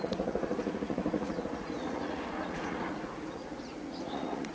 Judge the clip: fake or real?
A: fake